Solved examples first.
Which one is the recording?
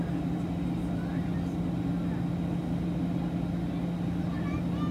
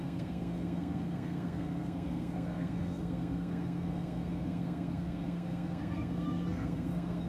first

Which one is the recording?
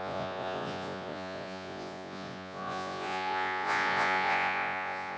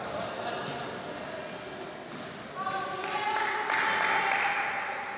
second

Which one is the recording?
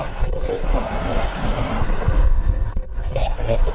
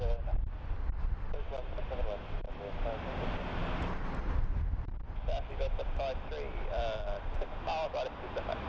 second